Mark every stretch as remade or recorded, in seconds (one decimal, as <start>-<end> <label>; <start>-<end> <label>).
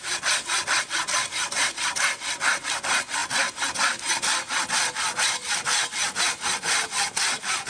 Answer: 0.0-7.7 recorded